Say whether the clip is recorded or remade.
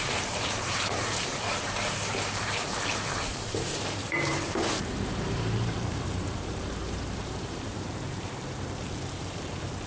remade